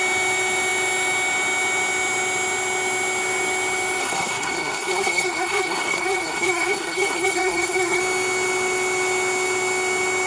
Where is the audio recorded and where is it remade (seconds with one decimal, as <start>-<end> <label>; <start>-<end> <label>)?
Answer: 0.0-4.0 recorded; 4.0-8.0 remade; 8.0-10.3 recorded